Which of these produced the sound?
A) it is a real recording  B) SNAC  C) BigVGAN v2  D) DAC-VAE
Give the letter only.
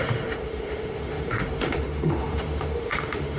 D